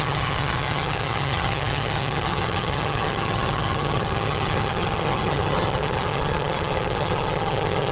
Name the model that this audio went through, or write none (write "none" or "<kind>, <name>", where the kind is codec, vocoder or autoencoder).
vocoder, HiFi-GAN